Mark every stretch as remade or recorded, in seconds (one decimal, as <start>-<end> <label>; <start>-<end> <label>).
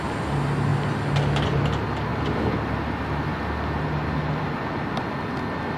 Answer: 0.0-5.8 recorded